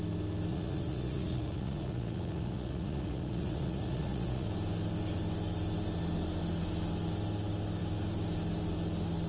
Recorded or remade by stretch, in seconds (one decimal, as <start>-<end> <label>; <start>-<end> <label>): 0.0-0.5 recorded; 0.5-4.5 remade; 4.5-9.3 recorded